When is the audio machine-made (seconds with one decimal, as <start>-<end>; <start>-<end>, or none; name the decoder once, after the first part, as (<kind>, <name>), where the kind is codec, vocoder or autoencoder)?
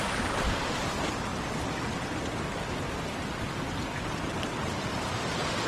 none